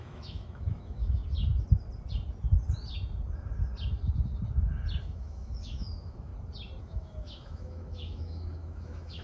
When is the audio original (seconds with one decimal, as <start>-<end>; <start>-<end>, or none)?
1.2-5.0; 6.3-6.8